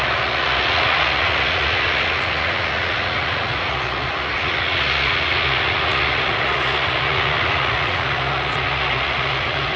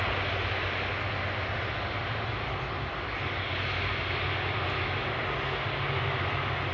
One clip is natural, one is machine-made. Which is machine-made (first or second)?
first